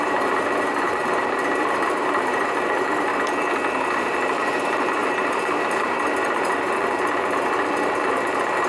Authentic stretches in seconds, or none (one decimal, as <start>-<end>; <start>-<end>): 3.1-3.8